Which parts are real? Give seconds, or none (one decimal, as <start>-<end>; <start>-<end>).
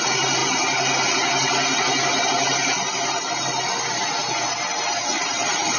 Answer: 0.0-5.8